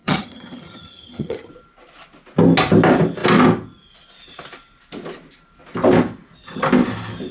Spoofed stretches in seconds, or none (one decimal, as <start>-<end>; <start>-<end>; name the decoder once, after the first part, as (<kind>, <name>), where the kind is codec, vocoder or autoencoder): 0.0-1.5 (vocoder, HiFi-GAN)